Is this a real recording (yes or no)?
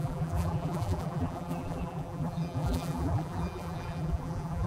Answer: no